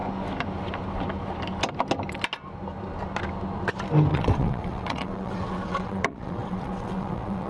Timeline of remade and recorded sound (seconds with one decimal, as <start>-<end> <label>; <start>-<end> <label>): 0.0-4.1 recorded; 4.1-7.5 remade

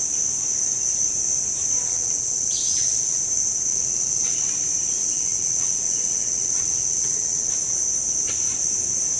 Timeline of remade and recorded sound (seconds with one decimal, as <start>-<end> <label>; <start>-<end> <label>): 0.0-1.9 recorded; 1.9-3.2 remade; 3.2-3.7 recorded; 3.7-4.4 remade; 4.4-5.0 recorded; 5.0-7.5 remade; 7.5-9.2 recorded

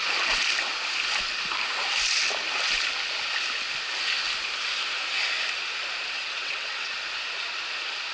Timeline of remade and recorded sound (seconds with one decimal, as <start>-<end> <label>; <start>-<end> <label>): 0.0-6.2 recorded; 6.2-6.9 remade; 6.9-8.1 recorded